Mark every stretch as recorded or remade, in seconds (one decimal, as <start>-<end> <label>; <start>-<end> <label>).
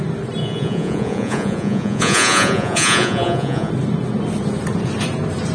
0.0-0.4 recorded; 0.4-3.7 remade; 3.7-5.5 recorded